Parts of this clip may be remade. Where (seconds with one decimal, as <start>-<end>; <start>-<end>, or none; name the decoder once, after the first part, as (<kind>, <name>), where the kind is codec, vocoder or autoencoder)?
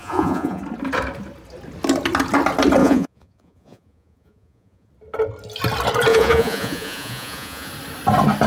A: 0.0-0.6 (vocoder, Vocos); 2.8-4.9; 6.1-7.7